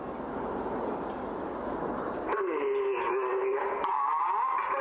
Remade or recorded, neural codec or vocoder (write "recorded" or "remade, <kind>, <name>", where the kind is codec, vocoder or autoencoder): recorded